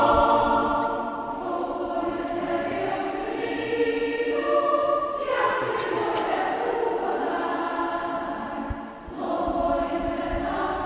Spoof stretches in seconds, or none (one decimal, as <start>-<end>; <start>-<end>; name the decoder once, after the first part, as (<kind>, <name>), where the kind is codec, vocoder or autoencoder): none